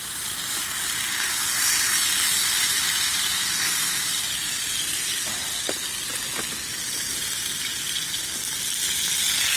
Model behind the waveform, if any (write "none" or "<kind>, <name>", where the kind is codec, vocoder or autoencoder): none